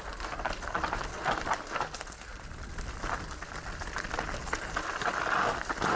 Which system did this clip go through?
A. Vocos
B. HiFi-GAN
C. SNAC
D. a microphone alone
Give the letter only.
D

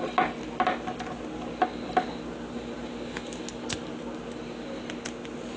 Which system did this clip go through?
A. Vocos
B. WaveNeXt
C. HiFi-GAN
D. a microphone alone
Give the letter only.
D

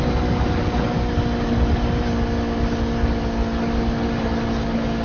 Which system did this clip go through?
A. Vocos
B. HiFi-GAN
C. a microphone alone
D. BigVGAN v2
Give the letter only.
C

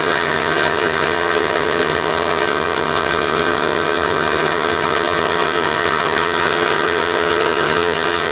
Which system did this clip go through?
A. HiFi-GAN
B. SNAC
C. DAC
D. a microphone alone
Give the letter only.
A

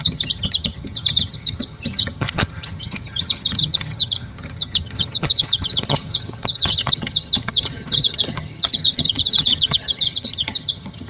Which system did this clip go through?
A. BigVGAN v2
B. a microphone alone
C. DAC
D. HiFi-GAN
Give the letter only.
D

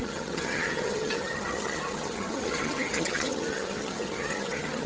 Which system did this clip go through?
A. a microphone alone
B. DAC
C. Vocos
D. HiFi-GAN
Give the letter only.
D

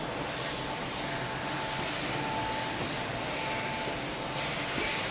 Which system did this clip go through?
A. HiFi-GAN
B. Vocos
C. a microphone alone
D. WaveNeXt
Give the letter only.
C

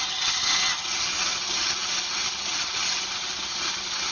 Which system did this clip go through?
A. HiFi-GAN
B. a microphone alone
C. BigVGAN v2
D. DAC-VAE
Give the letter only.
A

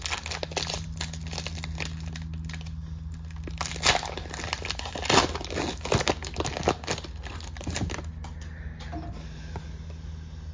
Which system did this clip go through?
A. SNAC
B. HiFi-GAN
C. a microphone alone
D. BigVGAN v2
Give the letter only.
C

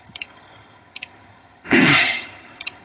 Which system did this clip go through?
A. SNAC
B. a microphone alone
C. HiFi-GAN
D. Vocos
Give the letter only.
C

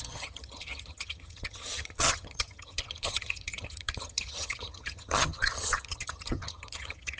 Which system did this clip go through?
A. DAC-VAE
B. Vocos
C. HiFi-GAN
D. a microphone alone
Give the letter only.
C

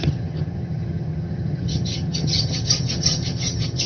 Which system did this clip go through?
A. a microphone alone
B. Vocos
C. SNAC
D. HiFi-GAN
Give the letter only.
D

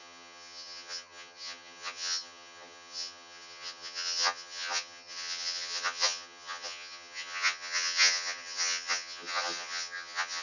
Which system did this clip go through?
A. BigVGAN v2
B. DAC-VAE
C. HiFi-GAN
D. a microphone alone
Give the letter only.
C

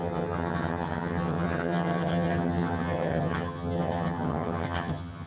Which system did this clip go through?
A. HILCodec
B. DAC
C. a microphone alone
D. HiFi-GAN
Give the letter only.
D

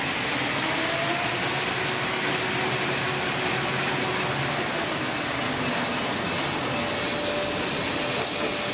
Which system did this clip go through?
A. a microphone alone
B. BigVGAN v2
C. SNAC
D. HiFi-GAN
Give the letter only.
A